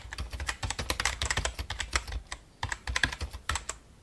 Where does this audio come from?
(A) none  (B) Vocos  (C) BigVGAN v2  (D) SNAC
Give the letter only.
A